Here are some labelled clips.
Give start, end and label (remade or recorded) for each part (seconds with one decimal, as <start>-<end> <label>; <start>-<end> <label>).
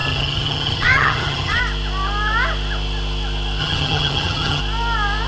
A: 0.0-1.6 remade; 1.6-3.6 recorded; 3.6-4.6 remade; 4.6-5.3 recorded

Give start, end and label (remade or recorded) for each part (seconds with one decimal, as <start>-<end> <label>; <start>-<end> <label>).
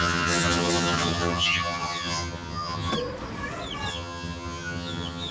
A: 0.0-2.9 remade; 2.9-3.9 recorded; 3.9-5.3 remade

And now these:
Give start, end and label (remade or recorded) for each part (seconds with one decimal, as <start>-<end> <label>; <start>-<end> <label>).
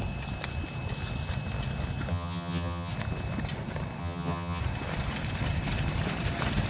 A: 0.0-2.1 recorded; 2.1-2.9 remade; 2.9-4.0 recorded; 4.0-4.6 remade; 4.6-6.7 recorded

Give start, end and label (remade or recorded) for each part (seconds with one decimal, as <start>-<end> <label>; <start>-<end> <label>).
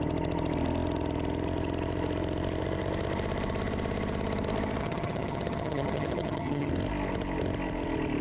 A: 0.0-4.8 recorded; 4.8-6.7 remade; 6.7-8.2 recorded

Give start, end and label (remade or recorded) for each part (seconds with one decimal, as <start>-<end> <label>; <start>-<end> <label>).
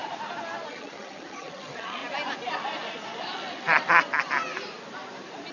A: 0.0-0.7 recorded; 0.7-2.0 remade; 2.0-5.5 recorded